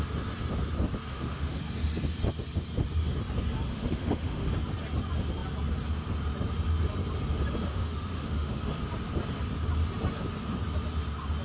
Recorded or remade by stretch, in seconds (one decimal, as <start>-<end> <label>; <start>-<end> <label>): 0.0-1.1 recorded; 1.1-1.6 remade; 1.6-3.7 recorded; 3.7-4.5 remade; 4.5-7.7 recorded; 7.7-8.8 remade; 8.8-11.4 recorded